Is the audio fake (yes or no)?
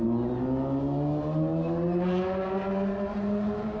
no